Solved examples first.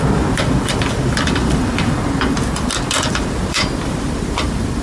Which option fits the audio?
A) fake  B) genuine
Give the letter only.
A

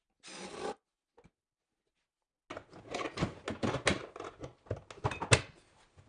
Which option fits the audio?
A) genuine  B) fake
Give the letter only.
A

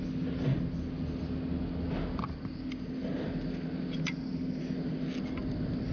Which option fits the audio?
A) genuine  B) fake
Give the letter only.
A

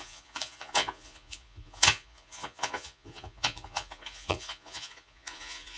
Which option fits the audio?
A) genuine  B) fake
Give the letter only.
B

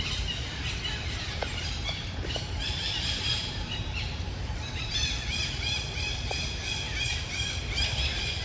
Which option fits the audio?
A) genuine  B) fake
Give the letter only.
B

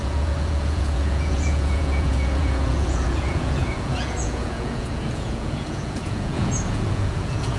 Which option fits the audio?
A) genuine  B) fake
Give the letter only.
B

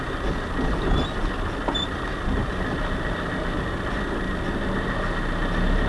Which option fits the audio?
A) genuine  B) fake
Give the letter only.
A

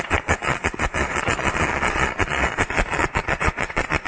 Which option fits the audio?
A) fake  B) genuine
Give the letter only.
A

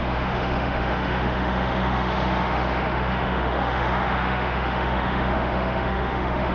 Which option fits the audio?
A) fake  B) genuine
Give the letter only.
A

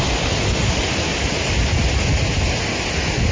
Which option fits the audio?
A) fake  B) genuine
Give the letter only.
B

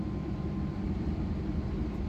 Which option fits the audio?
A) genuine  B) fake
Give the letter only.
A